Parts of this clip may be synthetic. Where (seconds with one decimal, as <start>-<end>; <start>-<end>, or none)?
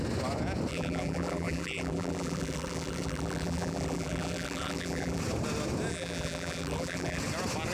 0.7-5.2; 5.9-7.2